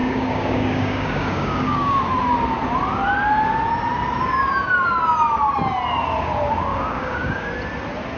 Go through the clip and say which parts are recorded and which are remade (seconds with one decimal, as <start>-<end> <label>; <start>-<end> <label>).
0.0-2.0 remade; 2.0-6.7 recorded; 6.7-7.5 remade; 7.5-8.2 recorded